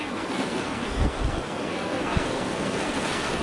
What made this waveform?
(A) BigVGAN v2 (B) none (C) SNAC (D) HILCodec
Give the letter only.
C